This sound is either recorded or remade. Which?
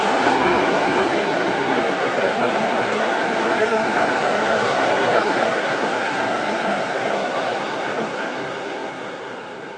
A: remade